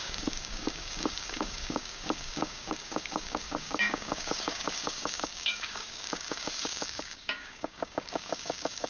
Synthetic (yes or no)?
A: yes